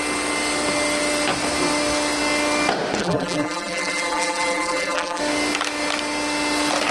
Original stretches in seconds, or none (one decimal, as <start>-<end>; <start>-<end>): 0.0-3.0; 5.2-6.9